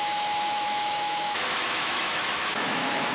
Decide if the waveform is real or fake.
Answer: fake